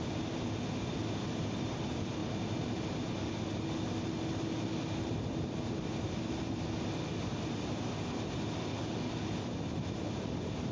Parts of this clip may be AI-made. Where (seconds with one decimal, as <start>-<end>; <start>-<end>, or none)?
2.2-3.2